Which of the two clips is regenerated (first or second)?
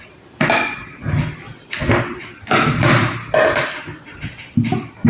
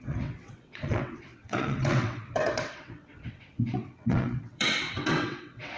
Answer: second